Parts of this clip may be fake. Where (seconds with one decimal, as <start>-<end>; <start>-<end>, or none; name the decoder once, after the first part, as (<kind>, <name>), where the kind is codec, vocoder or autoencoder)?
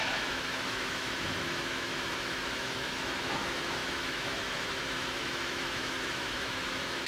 0.0-7.1 (autoencoder, DAC-VAE)